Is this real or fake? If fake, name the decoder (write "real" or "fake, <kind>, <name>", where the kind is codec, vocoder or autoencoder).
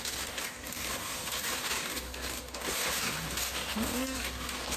fake, codec, DAC